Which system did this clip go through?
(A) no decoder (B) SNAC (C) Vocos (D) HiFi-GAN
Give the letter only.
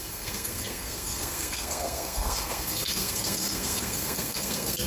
B